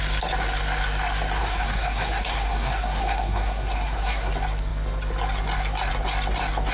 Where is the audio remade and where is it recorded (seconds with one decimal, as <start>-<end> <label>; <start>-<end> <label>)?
0.0-1.4 recorded; 1.4-4.3 remade; 4.3-6.7 recorded